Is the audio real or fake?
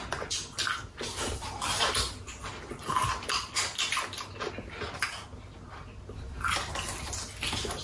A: real